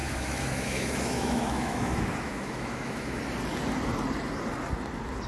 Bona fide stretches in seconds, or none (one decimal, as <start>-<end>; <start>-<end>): 3.2-5.3